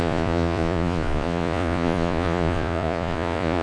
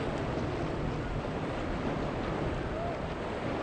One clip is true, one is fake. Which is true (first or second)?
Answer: second